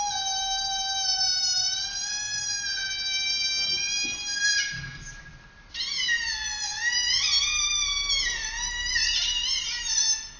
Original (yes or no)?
yes